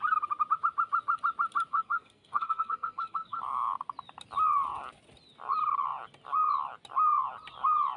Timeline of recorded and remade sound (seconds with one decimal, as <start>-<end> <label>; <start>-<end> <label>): 0.0-1.7 recorded; 1.7-3.4 remade; 3.4-8.0 recorded